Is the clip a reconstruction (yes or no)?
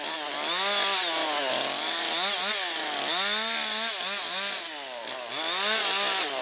no